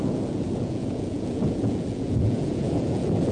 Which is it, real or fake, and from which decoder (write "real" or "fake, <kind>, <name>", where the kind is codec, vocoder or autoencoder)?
fake, vocoder, Vocos